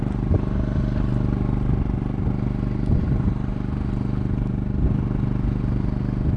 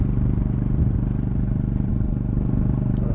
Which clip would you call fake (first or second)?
second